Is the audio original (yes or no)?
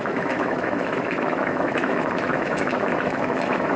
no